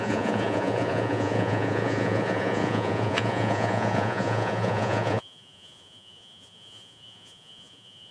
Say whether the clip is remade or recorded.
remade